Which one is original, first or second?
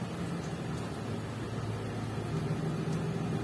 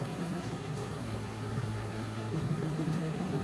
first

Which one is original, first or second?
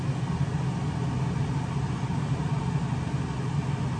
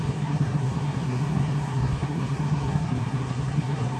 first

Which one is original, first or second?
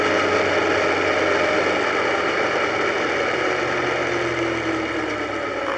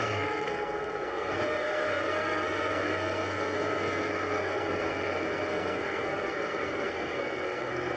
first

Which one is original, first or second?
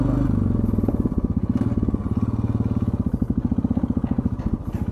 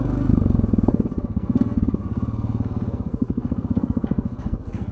first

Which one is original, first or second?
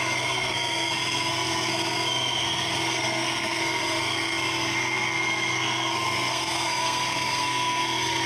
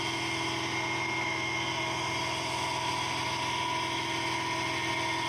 second